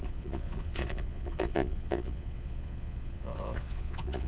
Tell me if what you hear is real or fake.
fake